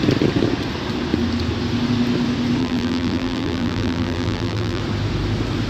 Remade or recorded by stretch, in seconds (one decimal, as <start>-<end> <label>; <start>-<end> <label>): 0.0-2.6 recorded; 2.6-4.8 remade; 4.8-5.7 recorded